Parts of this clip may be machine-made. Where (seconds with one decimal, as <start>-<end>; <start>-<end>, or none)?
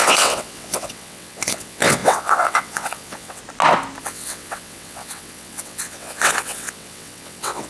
0.0-3.4; 4.0-7.7